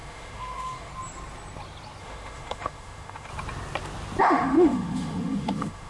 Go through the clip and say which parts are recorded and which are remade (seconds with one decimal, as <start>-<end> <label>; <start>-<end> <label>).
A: 0.0-0.9 remade; 0.9-2.0 recorded; 2.0-3.3 remade; 3.3-4.2 recorded; 4.2-5.9 remade